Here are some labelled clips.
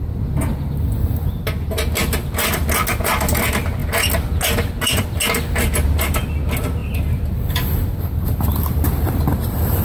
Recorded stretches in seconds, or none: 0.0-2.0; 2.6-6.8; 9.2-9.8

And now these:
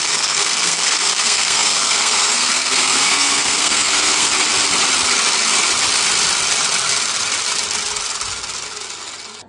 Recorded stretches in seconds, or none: 4.3-9.5

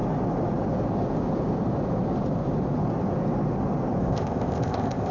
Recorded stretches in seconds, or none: 0.0-4.0

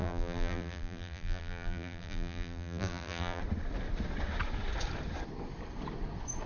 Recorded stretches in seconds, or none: 3.4-6.5

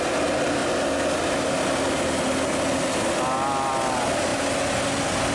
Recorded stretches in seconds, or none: 0.0-5.3

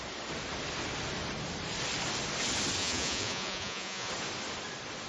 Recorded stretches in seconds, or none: 0.0-2.8; 4.1-5.1

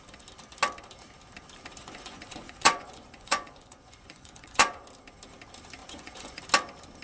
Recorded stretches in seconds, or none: 0.0-1.8; 4.8-5.8; 6.4-7.0